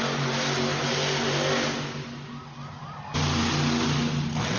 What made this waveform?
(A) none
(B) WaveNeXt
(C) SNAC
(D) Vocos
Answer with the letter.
A